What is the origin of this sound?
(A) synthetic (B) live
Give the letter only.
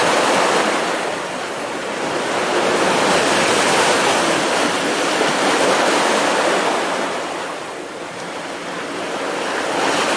B